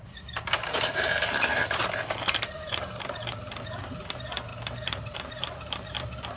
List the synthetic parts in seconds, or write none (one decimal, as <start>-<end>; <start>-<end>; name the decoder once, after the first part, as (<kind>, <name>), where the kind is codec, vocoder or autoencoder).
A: 0.0-1.6 (vocoder, BigVGAN v2); 2.1-6.4